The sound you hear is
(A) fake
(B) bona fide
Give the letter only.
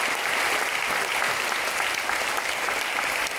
B